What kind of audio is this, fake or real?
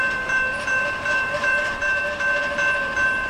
fake